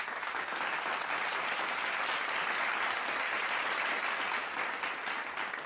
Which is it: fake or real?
real